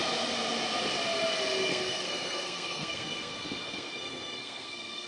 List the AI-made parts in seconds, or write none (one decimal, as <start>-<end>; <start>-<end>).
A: 1.7-5.1